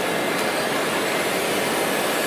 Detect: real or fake real